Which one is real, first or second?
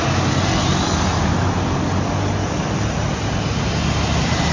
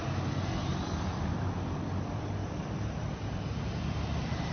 first